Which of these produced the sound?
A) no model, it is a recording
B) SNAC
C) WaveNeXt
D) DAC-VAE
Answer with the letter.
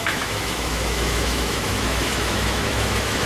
D